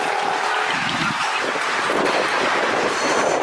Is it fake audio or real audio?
real